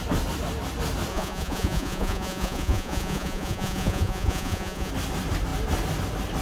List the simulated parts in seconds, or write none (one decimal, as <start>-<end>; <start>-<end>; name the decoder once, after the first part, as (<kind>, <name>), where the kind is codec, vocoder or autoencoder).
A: 1.1-4.9 (vocoder, Vocos)